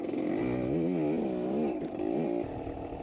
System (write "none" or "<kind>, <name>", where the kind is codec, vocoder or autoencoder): none